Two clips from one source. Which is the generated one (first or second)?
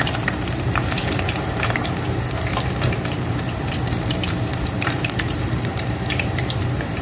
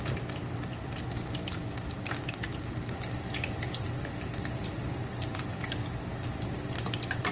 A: first